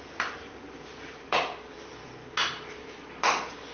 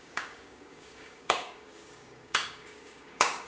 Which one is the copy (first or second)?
second